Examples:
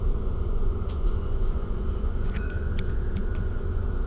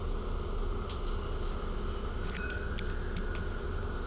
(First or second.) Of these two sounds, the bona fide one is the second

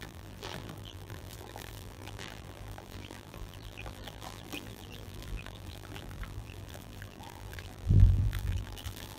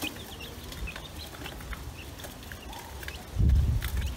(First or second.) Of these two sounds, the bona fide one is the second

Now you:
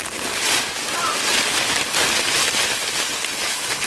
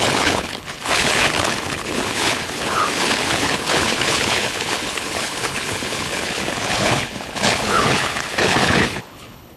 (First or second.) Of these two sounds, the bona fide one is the first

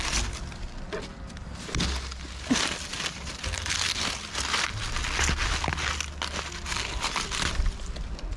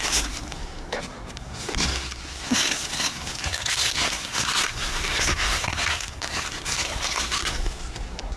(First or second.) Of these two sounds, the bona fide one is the first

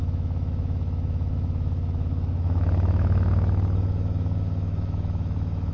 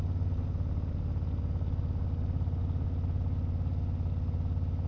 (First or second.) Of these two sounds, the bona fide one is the second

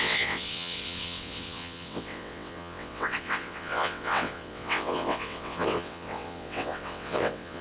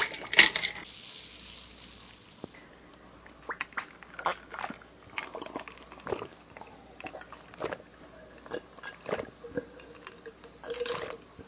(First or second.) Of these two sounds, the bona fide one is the second